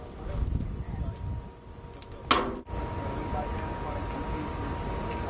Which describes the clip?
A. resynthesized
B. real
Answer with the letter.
B